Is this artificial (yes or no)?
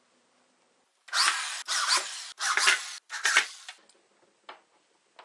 no